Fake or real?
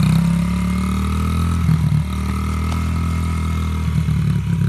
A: real